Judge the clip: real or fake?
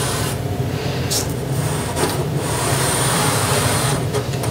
fake